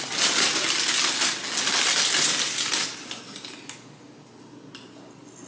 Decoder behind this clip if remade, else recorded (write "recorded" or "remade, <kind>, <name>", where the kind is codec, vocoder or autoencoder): recorded